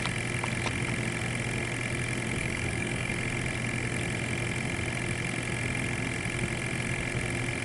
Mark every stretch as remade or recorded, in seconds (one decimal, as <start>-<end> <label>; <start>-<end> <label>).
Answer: 0.0-2.4 recorded; 2.4-3.1 remade; 3.1-7.6 recorded